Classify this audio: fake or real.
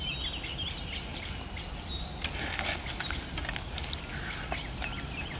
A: real